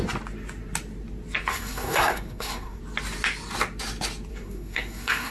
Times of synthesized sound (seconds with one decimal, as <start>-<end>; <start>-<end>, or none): 1.5-2.8; 4.3-5.3